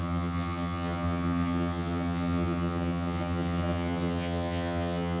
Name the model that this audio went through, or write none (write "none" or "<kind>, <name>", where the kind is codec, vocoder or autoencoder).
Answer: vocoder, HiFi-GAN